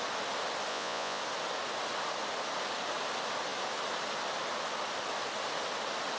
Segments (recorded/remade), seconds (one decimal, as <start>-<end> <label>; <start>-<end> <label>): 0.0-0.7 recorded; 0.7-1.2 remade; 1.2-6.2 recorded